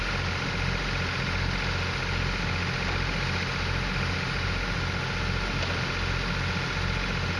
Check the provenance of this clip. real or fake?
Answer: real